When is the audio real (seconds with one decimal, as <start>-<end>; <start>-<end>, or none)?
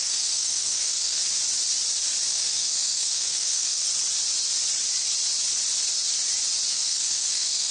1.2-2.3; 3.9-6.7